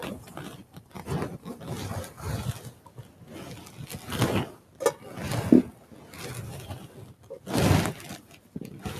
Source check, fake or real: real